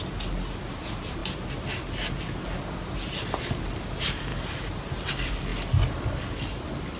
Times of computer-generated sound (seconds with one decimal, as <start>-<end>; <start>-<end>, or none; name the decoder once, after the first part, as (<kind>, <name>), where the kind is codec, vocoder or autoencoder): none